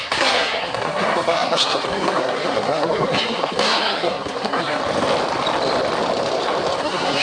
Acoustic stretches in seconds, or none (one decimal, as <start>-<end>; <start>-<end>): 4.8-6.8